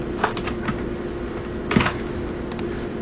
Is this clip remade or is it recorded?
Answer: recorded